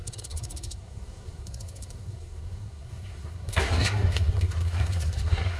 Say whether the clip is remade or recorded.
remade